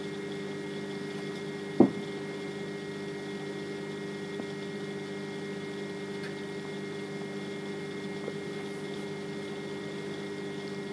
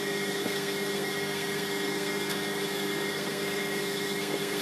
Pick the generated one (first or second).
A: second